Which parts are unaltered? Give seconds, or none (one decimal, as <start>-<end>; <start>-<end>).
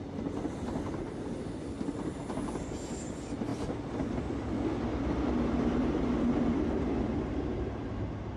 0.0-8.4